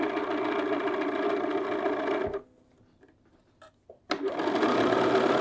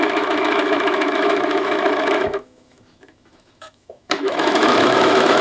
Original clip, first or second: first